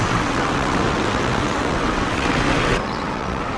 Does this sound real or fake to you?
fake